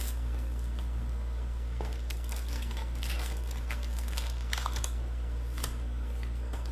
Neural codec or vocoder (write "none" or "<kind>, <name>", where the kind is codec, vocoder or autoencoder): codec, SNAC